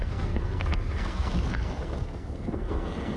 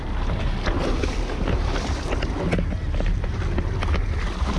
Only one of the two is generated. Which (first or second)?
first